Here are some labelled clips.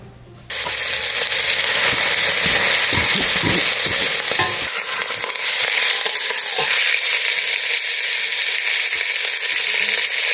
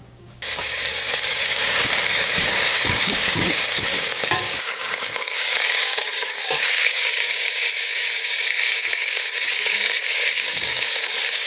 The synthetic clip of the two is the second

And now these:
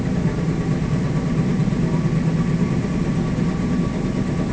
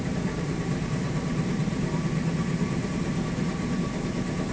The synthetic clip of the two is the second